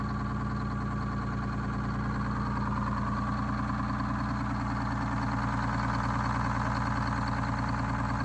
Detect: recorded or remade recorded